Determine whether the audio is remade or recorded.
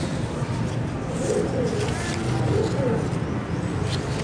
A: recorded